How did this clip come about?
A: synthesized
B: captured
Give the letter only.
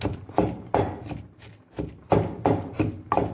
B